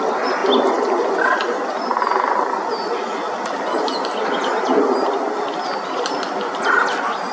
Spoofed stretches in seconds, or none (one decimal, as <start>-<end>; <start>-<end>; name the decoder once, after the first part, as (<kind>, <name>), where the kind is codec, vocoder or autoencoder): none